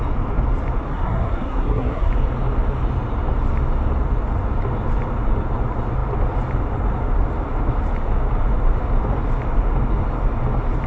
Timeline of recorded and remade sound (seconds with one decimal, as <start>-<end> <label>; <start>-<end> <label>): 0.0-0.9 recorded; 0.9-2.1 remade; 2.1-10.9 recorded